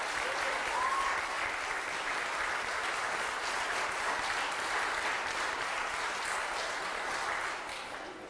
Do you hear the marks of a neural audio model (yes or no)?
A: no